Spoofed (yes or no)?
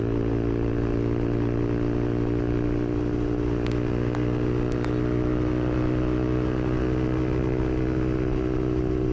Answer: no